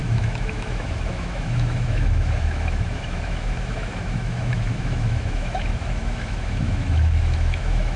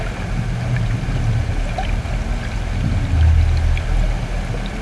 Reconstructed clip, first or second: first